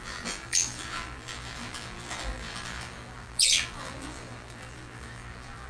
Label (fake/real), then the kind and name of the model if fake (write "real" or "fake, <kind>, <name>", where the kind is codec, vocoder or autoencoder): fake, vocoder, BigVGAN v2